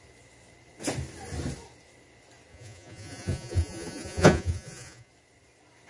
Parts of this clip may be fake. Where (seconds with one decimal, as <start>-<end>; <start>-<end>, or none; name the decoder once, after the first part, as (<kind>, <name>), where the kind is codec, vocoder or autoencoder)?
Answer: 2.5-5.1 (vocoder, Vocos)